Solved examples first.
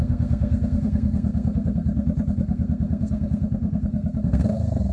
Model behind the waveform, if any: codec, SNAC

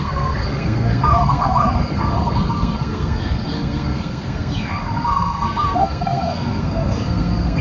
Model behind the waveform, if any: codec, SNAC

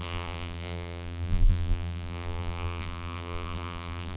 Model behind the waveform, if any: vocoder, BigVGAN v2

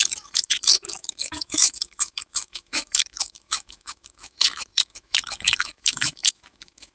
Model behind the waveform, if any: autoencoder, DAC-VAE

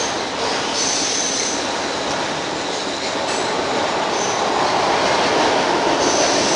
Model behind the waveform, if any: none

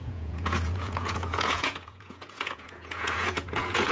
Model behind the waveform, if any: vocoder, Vocos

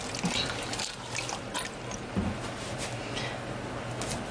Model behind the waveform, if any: none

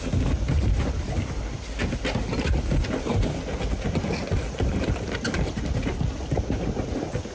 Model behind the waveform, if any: none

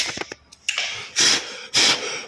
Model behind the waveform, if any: none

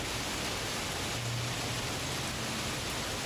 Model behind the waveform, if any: none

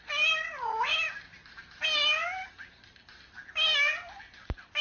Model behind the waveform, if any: none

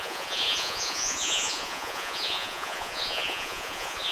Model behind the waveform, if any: vocoder, Vocos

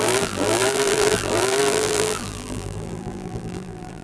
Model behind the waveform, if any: vocoder, BigVGAN v2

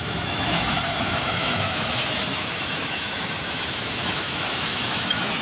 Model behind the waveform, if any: autoencoder, DAC-VAE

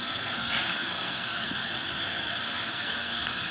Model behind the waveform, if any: codec, SNAC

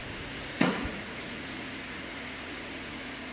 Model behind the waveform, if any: vocoder, Vocos